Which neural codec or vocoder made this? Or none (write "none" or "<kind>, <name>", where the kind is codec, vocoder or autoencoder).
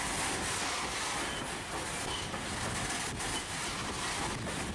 none